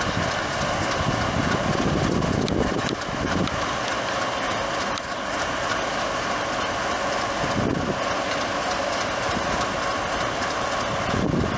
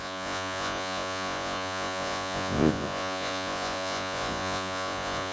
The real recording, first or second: first